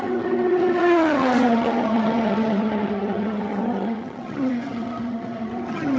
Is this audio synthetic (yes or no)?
yes